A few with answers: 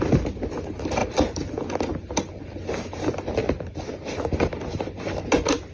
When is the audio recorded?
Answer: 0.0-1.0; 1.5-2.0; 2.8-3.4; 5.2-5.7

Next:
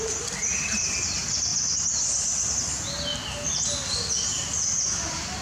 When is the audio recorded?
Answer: 0.0-5.4

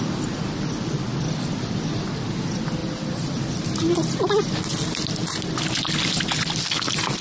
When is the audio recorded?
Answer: 0.0-2.8; 3.3-7.2

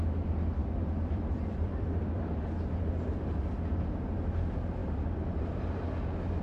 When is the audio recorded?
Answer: 0.0-0.6; 2.4-6.4